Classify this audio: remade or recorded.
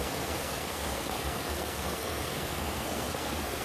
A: remade